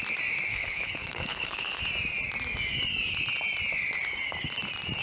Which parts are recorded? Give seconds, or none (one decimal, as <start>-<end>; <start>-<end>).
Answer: 0.0-0.5; 1.8-5.0